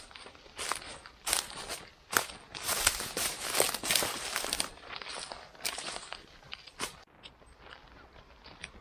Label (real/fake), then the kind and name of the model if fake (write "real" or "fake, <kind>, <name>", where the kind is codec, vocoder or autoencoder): real